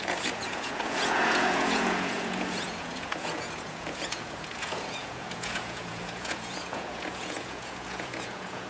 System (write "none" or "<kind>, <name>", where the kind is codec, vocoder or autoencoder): vocoder, Vocos